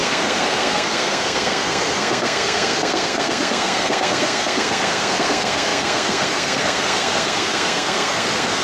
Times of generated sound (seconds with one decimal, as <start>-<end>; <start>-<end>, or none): 0.0-8.6